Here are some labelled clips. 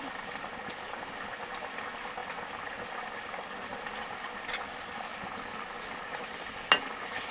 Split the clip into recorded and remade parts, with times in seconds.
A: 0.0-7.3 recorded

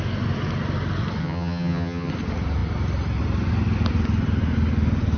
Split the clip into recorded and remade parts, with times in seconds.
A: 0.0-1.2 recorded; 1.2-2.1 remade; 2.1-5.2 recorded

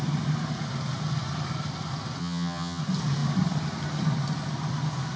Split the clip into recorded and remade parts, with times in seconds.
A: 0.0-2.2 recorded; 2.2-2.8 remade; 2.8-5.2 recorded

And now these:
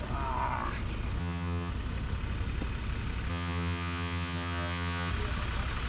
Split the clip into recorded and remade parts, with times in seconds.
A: 0.0-1.2 recorded; 1.2-1.7 remade; 1.7-3.3 recorded; 3.3-5.1 remade; 5.1-5.9 recorded